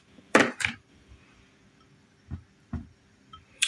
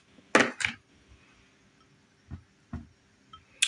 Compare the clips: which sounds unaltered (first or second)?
second